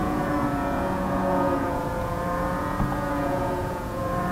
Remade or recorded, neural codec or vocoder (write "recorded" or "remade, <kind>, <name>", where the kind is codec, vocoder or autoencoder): remade, vocoder, Vocos